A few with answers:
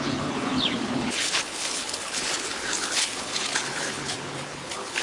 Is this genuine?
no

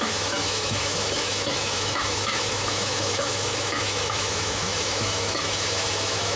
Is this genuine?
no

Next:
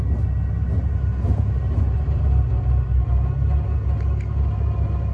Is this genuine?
yes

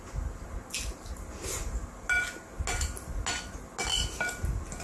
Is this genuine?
yes